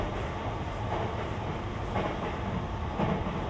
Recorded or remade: recorded